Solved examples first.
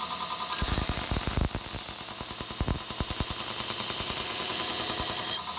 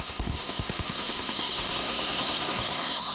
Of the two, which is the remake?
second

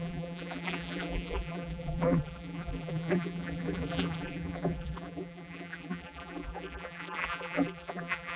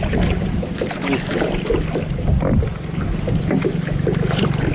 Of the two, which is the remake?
first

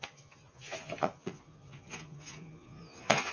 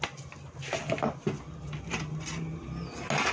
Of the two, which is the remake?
first